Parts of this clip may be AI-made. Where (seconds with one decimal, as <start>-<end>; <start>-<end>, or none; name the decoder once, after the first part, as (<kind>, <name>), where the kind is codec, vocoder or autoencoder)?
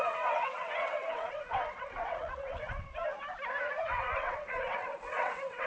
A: 0.0-3.0 (vocoder, WaveNeXt); 3.8-5.7